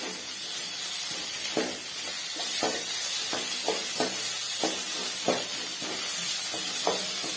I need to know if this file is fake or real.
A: real